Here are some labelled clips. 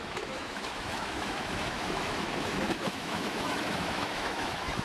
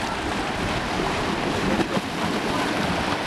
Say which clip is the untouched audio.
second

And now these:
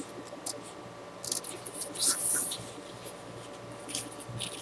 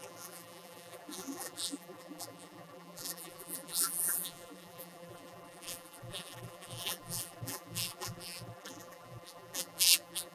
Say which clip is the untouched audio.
first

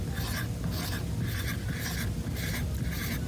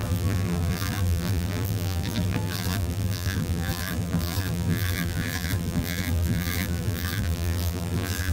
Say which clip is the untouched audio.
first